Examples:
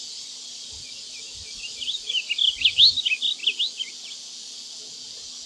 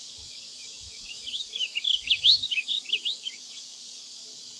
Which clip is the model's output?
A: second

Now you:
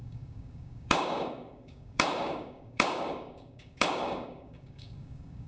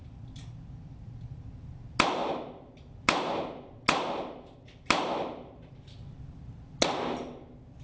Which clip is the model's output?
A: first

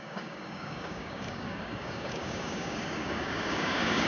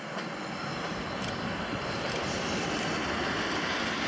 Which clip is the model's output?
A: first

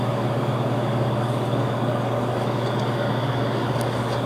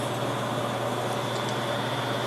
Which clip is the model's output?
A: first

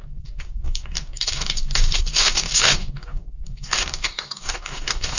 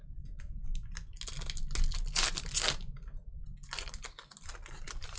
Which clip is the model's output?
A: first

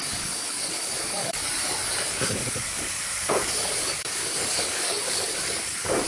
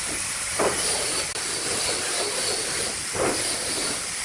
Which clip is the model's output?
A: first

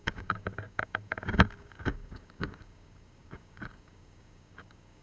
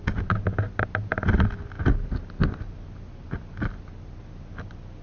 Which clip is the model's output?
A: first